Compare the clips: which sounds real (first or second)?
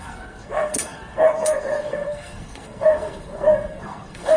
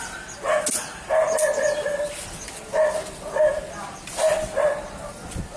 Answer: second